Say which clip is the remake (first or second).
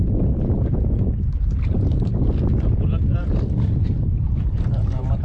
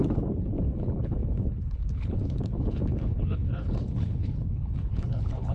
second